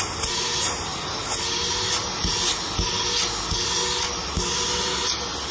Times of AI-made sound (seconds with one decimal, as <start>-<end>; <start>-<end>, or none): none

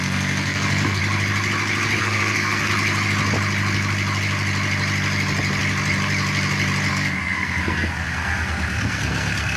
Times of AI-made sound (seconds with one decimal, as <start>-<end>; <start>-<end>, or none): 0.0-1.0; 2.0-2.7; 6.9-9.6

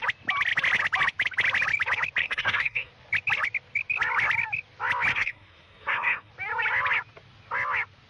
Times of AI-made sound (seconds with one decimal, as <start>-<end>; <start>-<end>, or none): 2.2-2.9; 5.1-6.3

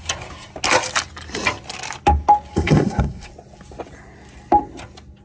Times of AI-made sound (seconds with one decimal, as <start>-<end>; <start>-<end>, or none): 2.5-3.3